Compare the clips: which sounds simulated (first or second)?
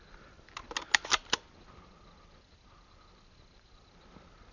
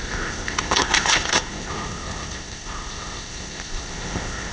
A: second